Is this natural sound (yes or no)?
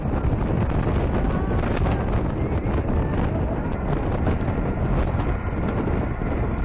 yes